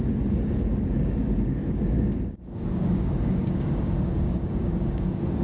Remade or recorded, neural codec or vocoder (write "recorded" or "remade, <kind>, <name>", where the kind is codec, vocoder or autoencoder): remade, codec, DAC